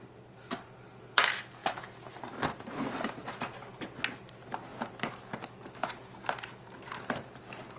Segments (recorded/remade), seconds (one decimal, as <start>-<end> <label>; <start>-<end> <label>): 0.0-1.6 recorded; 1.6-3.3 remade; 3.3-7.8 recorded